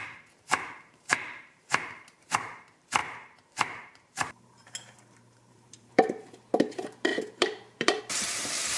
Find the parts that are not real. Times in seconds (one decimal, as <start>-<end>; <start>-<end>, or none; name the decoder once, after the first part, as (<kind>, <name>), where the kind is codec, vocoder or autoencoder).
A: 0.0-8.8 (vocoder, BigVGAN v2)